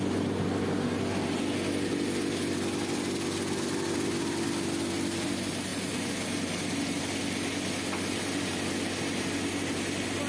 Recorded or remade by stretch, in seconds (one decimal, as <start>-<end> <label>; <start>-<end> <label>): 0.0-5.7 recorded; 5.7-7.0 remade; 7.0-10.3 recorded